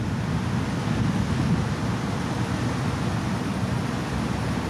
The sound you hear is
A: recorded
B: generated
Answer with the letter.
A